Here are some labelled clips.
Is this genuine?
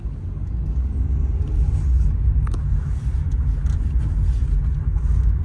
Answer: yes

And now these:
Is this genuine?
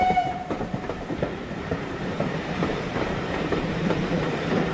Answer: no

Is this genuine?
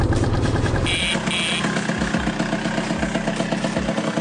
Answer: yes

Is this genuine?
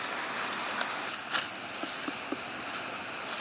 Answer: yes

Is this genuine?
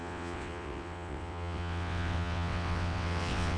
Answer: no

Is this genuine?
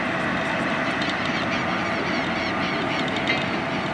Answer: yes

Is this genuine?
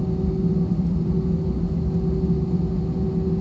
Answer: yes